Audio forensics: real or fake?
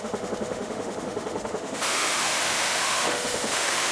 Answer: fake